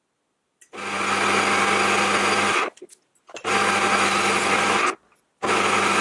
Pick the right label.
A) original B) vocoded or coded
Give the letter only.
A